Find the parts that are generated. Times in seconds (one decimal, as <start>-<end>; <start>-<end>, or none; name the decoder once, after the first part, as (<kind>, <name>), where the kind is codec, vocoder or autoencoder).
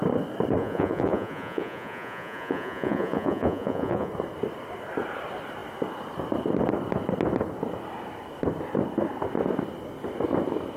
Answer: 0.6-4.1 (vocoder, Vocos)